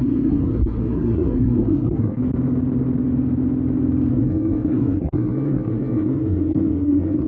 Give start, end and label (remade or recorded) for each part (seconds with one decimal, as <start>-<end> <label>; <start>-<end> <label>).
0.0-2.2 remade; 2.2-4.1 recorded; 4.1-7.3 remade